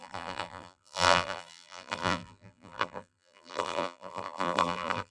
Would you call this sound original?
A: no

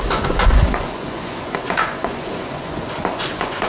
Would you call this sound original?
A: no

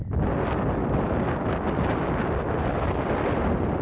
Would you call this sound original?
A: yes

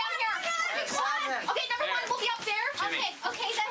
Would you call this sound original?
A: yes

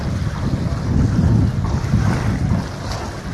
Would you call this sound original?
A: yes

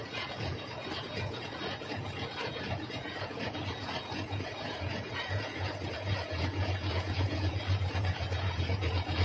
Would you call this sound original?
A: no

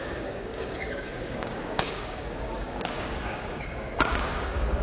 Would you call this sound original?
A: no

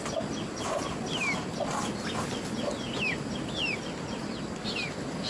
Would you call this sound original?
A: yes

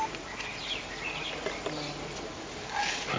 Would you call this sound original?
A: yes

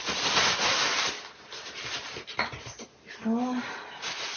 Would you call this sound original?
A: yes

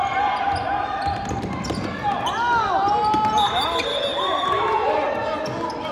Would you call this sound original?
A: yes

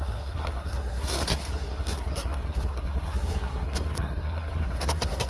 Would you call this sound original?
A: no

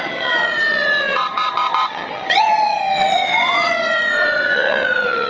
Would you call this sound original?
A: no